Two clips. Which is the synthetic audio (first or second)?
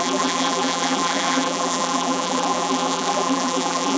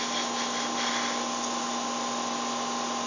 first